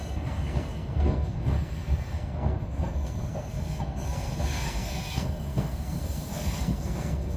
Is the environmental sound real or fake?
fake